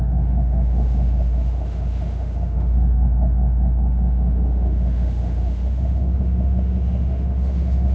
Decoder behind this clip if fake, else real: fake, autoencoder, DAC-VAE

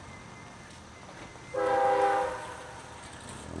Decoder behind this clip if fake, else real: real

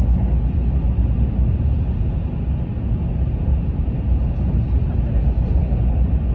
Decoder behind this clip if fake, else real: real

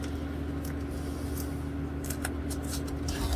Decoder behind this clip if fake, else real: real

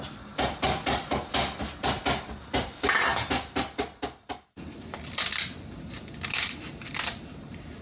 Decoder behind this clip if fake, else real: real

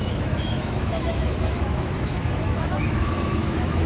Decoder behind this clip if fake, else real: fake, autoencoder, DAC-VAE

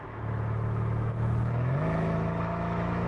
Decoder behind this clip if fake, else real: fake, autoencoder, DAC-VAE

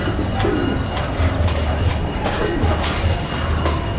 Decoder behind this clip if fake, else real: real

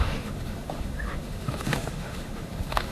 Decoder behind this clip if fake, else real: fake, autoencoder, DAC-VAE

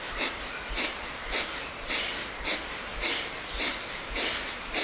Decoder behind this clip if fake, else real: real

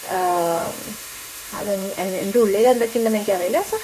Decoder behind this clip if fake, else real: fake, autoencoder, DAC-VAE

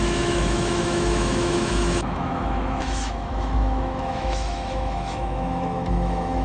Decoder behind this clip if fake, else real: fake, autoencoder, DAC-VAE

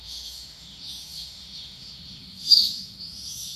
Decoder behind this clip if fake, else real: fake, autoencoder, DAC-VAE